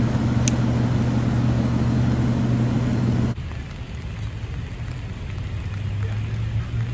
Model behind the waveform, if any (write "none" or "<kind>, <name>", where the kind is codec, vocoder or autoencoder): none